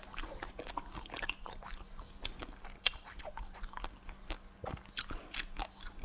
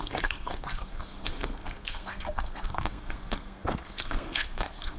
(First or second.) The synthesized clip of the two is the second